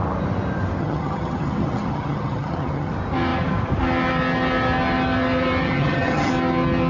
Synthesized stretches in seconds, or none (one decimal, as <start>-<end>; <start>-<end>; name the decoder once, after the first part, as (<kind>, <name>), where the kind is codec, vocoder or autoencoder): 0.8-2.9 (vocoder, HiFi-GAN); 5.6-6.3